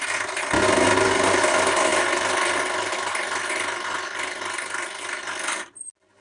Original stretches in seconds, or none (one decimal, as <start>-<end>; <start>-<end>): 0.0-6.2